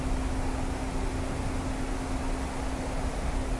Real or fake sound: real